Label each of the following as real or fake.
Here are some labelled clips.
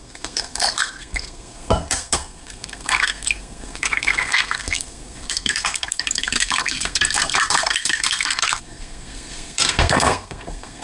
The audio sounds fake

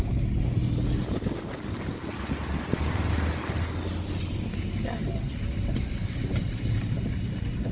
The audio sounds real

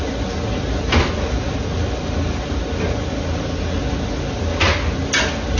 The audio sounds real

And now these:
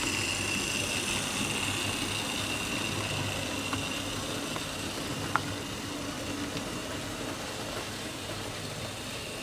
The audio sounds real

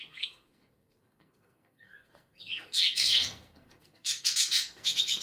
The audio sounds fake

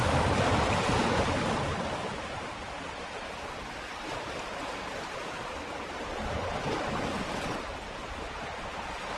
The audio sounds real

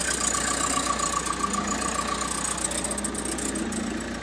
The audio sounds real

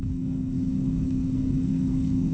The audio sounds fake